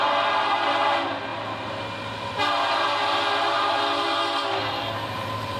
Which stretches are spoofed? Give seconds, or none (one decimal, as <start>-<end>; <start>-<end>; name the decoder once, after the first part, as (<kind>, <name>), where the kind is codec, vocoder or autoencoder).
none